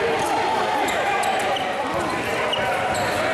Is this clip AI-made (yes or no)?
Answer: no